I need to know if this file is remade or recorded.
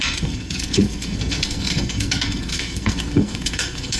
remade